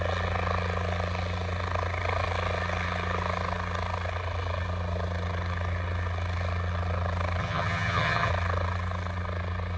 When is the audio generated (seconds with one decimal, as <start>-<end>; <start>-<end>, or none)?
7.4-8.3